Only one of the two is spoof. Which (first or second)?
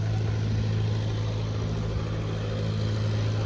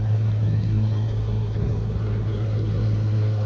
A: second